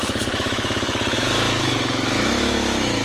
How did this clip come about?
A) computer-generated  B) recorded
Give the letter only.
A